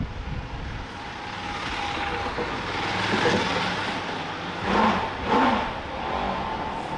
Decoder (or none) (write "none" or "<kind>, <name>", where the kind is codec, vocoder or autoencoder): none